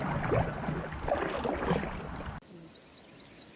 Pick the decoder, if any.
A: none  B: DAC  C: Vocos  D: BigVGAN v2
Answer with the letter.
A